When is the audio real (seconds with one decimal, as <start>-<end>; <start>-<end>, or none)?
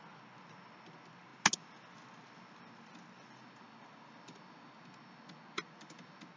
0.0-6.4